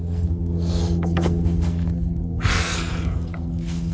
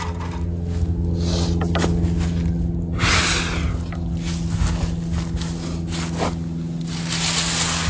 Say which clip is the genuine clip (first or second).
second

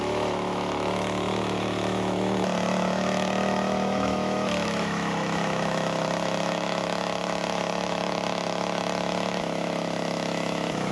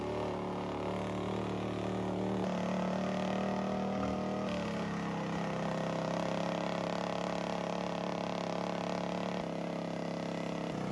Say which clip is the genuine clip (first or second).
second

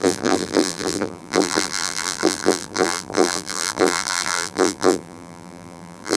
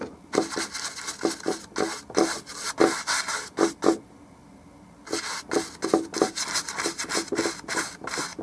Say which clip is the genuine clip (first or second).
second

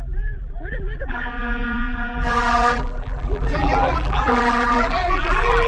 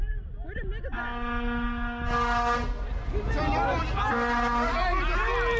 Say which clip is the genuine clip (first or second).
second